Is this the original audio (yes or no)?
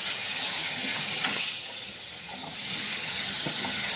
no